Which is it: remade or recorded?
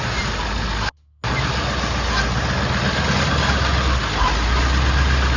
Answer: recorded